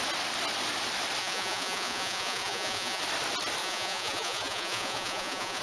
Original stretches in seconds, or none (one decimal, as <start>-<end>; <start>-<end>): 0.0-1.2; 3.0-3.6